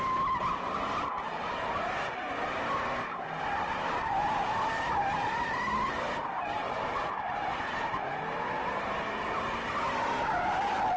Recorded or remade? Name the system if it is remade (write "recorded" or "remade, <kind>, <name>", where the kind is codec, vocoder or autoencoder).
recorded